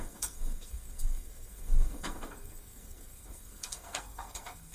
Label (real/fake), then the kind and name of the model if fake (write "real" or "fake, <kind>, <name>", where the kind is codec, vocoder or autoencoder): fake, codec, SNAC